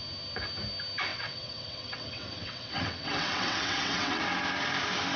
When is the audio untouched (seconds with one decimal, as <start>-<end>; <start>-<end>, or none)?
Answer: 0.0-1.1; 4.2-5.2